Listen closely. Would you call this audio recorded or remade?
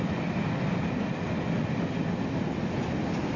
recorded